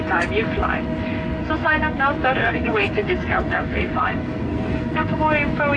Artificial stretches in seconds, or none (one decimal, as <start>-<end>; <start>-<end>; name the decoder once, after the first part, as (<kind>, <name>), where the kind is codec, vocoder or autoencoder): 1.4-2.0 (codec, SNAC); 2.4-5.2